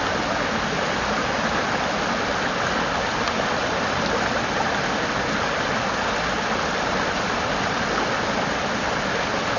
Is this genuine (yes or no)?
yes